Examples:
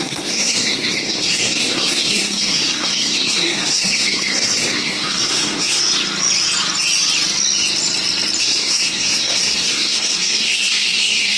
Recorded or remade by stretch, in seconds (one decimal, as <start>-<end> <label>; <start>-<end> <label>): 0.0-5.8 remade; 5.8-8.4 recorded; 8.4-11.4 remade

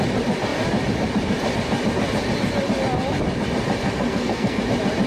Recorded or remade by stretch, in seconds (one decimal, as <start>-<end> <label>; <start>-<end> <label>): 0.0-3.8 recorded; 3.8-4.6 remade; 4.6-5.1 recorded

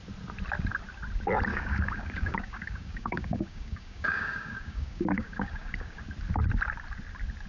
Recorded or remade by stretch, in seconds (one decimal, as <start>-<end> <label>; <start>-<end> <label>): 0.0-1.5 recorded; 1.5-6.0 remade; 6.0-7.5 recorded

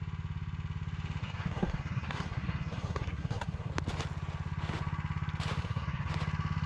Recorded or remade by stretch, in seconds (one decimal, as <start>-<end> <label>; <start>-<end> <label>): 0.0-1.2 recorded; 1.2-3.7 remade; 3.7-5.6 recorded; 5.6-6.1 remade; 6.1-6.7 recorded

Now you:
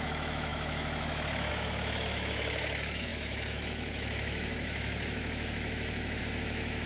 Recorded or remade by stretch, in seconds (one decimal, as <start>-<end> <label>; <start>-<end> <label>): 0.0-6.9 remade

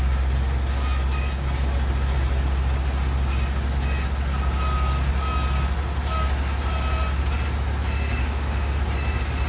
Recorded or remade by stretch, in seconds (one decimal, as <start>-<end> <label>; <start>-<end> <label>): 0.0-8.2 recorded; 8.2-8.8 remade; 8.8-9.5 recorded